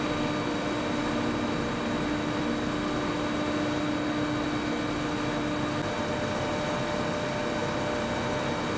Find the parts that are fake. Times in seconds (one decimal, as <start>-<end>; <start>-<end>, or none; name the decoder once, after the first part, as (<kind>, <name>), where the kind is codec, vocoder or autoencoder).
none